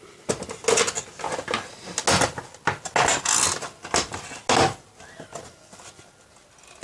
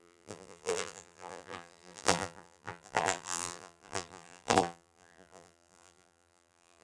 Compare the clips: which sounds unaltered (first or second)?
first